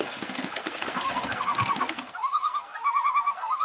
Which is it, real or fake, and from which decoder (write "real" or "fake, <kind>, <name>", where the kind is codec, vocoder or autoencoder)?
fake, codec, SNAC